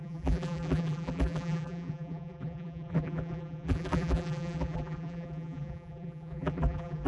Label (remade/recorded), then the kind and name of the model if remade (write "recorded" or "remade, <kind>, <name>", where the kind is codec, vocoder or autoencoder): remade, vocoder, BigVGAN v2